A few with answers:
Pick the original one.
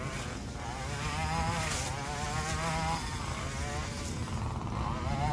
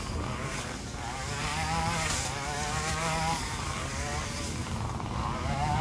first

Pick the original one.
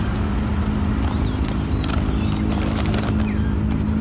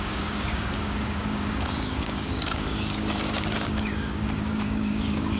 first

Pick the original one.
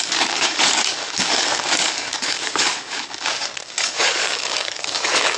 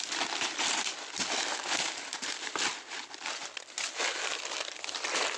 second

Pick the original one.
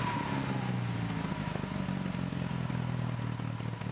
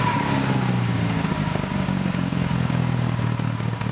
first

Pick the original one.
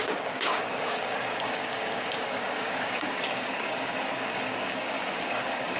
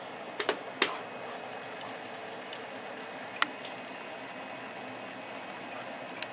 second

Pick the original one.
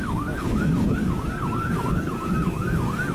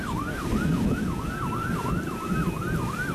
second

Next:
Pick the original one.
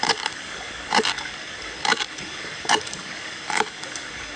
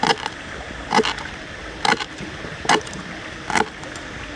second